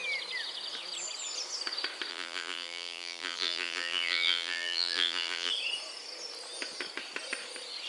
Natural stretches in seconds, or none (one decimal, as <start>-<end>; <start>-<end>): 0.0-2.1; 5.5-7.9